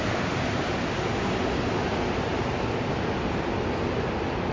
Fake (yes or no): no